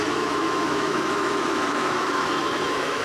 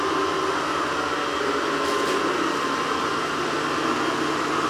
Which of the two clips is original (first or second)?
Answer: second